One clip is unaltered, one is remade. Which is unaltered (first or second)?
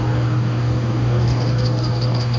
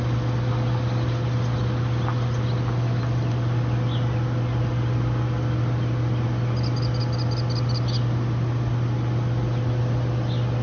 second